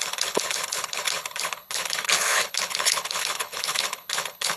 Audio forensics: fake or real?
fake